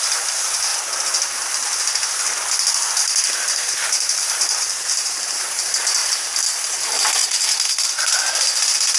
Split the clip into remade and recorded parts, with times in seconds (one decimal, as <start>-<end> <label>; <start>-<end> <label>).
0.0-0.7 remade; 0.7-3.7 recorded; 3.7-6.0 remade; 6.0-6.6 recorded; 6.6-7.2 remade; 7.2-7.8 recorded; 7.8-9.0 remade